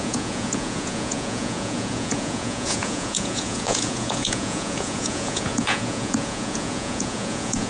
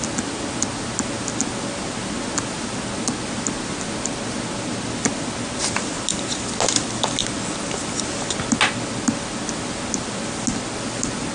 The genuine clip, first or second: second